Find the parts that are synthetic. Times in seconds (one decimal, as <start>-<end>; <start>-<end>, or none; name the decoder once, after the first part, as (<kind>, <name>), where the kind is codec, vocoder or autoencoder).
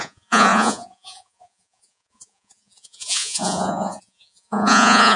0.0-5.2 (vocoder, Vocos)